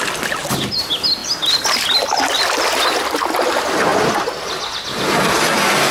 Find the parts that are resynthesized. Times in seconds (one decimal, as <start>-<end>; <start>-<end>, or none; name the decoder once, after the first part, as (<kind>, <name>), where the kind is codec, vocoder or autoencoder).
none